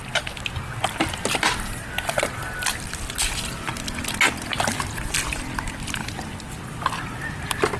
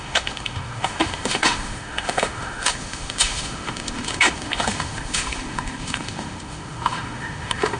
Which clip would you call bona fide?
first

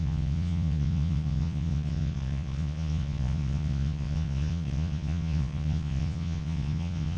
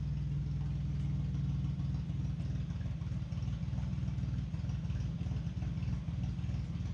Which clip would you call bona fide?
second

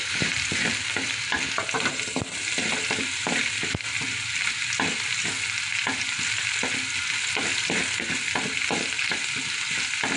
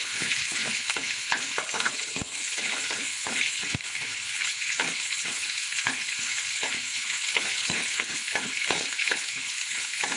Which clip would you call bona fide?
first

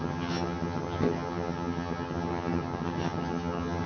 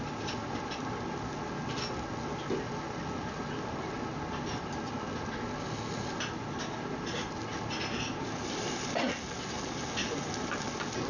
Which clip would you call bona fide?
second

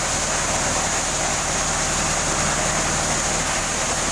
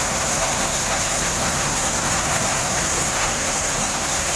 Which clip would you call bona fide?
first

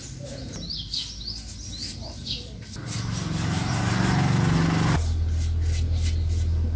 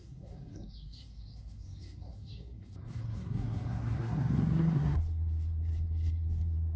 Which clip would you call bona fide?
first